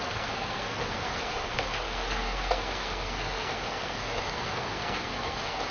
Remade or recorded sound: remade